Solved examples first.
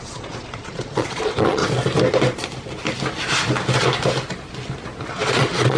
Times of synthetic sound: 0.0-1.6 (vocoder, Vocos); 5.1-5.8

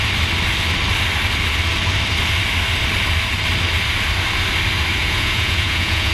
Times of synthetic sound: 5.0-6.1 (vocoder, Vocos)

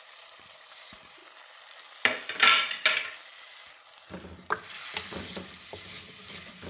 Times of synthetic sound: 0.0-1.2 (vocoder, BigVGAN v2); 5.2-6.7